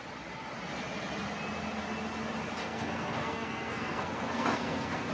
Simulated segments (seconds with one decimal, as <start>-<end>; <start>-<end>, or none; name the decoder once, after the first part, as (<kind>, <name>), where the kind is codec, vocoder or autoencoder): 2.6-5.1 (codec, SNAC)